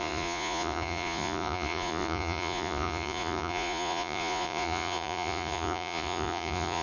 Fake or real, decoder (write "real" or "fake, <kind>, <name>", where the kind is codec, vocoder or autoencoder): fake, vocoder, Vocos